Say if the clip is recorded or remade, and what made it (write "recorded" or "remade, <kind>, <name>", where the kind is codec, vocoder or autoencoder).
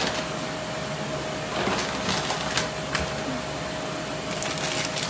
recorded